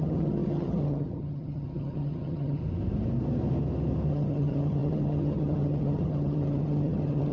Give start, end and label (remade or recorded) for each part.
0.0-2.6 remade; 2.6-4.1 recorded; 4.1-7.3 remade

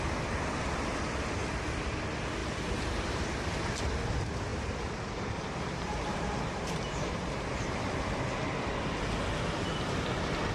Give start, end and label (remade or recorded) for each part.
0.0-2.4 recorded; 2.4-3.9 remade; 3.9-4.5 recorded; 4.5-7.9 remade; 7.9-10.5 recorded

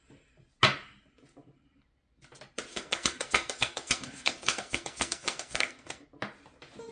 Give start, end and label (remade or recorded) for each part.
0.0-2.7 recorded; 2.7-6.0 remade; 6.0-6.9 recorded

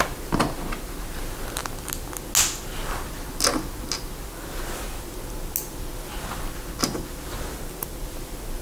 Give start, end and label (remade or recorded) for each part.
0.0-8.6 recorded

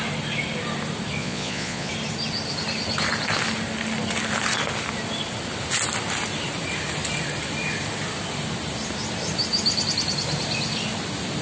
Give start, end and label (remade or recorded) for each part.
0.0-1.2 recorded; 1.2-1.9 remade; 1.9-11.4 recorded

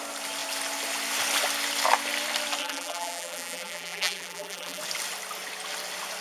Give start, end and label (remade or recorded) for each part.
0.0-2.6 recorded; 2.6-4.8 remade; 4.8-6.2 recorded

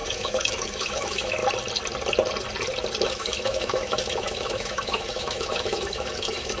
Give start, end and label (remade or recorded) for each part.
0.0-1.4 remade; 1.4-3.0 recorded; 3.0-6.6 remade

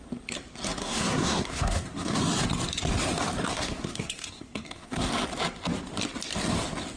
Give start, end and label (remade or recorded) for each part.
0.0-0.8 recorded; 0.8-2.2 remade; 2.2-3.5 recorded; 3.5-5.1 remade; 5.1-7.0 recorded